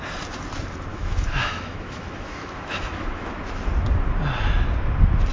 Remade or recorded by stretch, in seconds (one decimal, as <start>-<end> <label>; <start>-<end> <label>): 0.0-0.9 recorded; 0.9-3.4 remade; 3.4-5.3 recorded